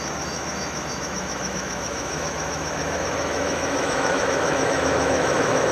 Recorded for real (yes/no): no